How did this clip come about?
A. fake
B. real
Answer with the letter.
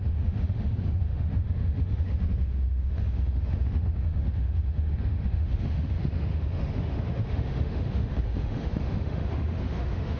A